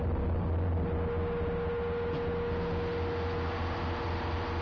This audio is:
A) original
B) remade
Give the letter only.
A